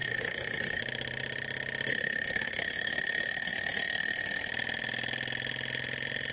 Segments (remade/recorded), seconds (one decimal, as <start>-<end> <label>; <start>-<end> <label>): 0.0-0.8 remade; 0.8-1.9 recorded; 1.9-4.5 remade; 4.5-6.3 recorded

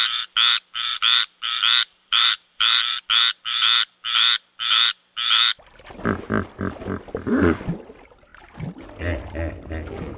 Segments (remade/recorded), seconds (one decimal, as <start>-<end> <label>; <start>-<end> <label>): 0.0-0.9 recorded; 0.9-3.0 remade; 3.0-10.2 recorded

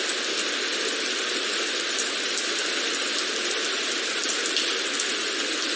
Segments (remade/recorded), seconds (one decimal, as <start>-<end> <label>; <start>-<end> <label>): 0.0-5.8 recorded